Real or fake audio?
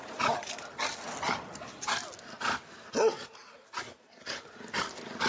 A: real